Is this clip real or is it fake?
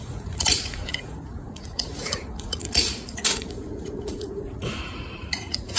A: fake